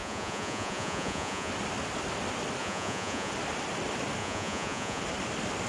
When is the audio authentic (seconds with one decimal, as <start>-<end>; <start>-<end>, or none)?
1.5-2.6; 3.3-4.2; 5.0-5.7